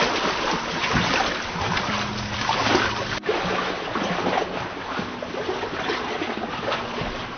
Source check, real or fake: real